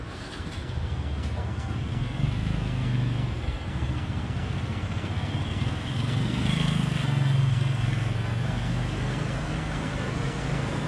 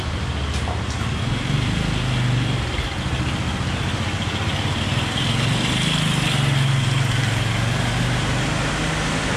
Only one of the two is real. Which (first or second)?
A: second